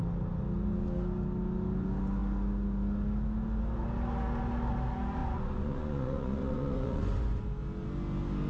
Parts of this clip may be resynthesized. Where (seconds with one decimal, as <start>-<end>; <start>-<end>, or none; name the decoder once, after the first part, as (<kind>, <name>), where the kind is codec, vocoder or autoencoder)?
5.2-7.4 (vocoder, Vocos)